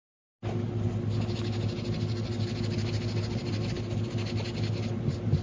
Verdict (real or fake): real